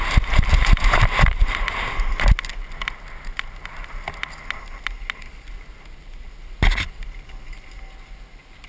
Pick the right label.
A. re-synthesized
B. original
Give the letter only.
B